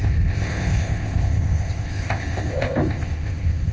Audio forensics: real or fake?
fake